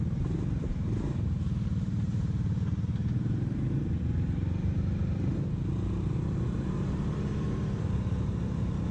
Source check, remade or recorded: remade